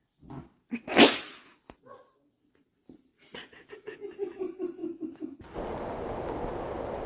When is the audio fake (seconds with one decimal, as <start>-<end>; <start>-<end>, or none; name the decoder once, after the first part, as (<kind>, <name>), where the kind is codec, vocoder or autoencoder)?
none